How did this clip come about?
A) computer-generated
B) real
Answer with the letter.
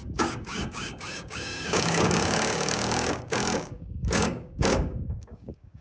A